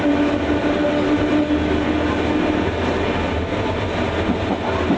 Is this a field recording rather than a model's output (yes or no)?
yes